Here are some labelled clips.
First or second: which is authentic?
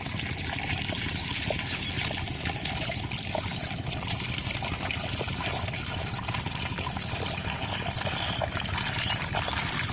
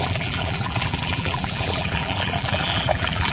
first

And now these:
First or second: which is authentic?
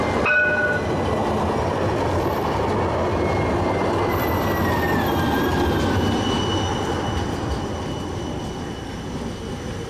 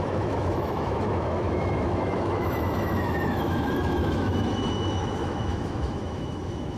first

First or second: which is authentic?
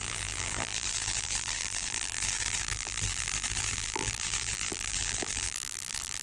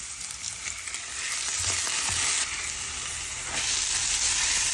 second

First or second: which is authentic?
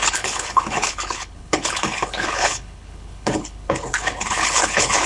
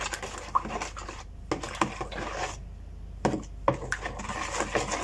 second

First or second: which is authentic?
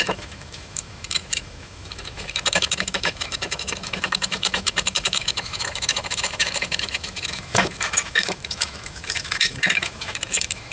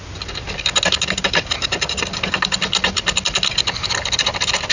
second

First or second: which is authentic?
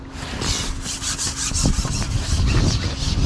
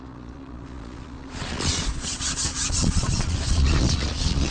first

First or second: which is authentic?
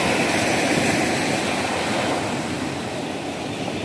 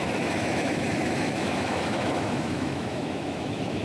first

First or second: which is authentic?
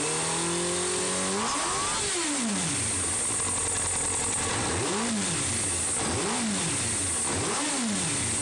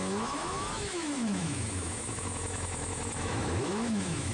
first